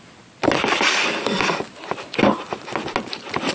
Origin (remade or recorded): recorded